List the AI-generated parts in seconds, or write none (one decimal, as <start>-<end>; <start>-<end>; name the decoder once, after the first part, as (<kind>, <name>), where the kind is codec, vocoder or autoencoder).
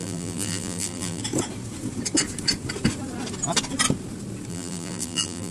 0.0-1.2 (vocoder, BigVGAN v2); 4.5-5.5